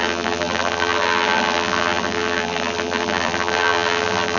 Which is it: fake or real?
fake